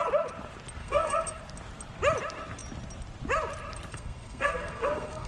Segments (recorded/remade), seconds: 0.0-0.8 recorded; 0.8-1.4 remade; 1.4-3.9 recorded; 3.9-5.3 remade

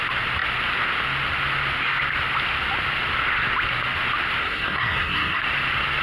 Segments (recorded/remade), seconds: 0.0-4.4 recorded; 4.4-5.4 remade; 5.4-6.0 recorded

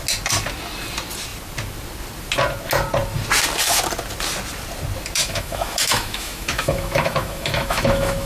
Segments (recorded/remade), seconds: 0.0-5.2 recorded; 5.2-8.3 remade

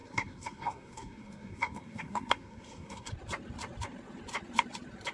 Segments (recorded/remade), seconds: 0.0-3.1 remade; 3.1-5.1 recorded

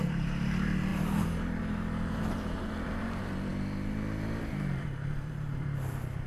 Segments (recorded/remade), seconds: 0.0-6.3 remade

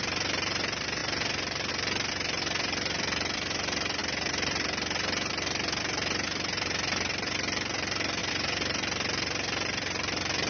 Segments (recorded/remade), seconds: 0.0-10.5 recorded

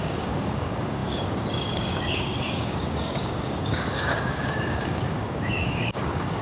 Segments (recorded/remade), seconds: 0.0-6.4 remade